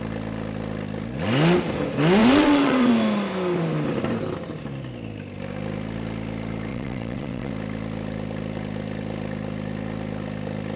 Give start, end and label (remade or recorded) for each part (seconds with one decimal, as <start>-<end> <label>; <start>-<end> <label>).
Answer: 0.0-2.2 recorded; 2.2-2.9 remade; 2.9-6.7 recorded; 6.7-7.5 remade; 7.5-10.8 recorded